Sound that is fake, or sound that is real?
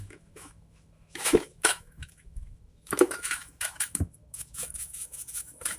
fake